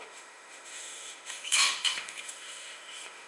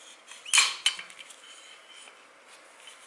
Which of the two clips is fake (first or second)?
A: first